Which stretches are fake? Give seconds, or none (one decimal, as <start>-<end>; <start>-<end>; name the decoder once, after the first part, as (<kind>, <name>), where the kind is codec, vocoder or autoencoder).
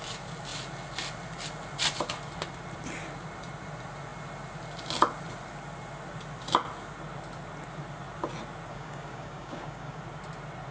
8.7-10.0 (codec, DAC)